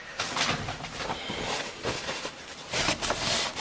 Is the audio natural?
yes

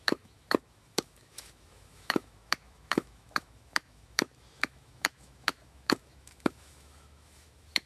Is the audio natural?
no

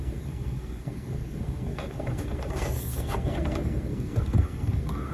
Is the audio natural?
no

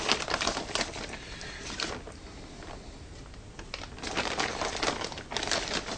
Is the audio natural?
yes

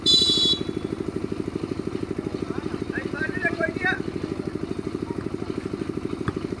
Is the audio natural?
no